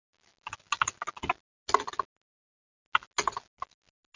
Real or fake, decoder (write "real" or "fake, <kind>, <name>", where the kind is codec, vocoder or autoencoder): real